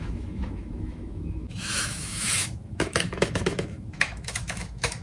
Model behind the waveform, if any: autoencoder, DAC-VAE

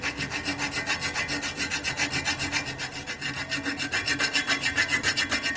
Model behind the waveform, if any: none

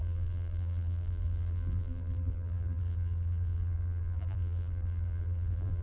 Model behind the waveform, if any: vocoder, BigVGAN v2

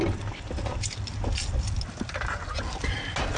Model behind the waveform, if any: none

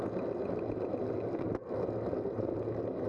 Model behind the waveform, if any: none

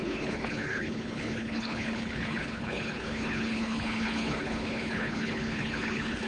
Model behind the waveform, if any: codec, HILCodec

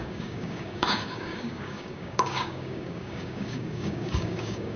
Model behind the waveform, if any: codec, DAC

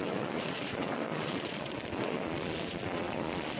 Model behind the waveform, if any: vocoder, Vocos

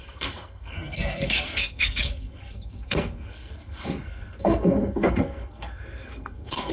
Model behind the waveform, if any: codec, SNAC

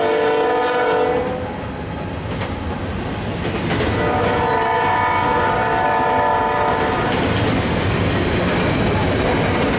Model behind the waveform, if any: none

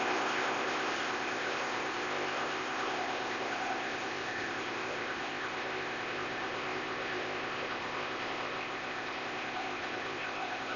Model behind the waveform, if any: codec, ZipCodec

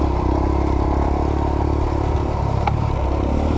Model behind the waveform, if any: none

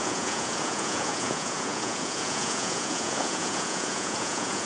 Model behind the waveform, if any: vocoder, Vocos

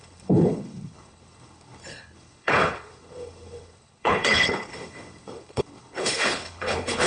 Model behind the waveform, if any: codec, HILCodec